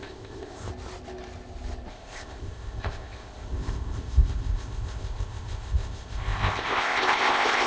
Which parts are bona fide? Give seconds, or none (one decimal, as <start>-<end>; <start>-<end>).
0.7-1.9